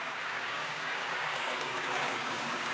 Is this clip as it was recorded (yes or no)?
no